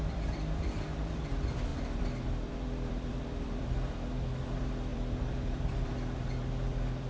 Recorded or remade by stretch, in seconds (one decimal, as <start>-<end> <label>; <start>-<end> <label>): 0.0-7.1 remade